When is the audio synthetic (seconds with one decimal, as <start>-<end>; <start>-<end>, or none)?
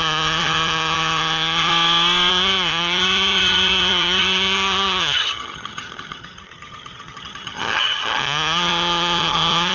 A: 0.0-1.7; 2.3-9.7